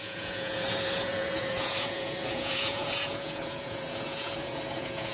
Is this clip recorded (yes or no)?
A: no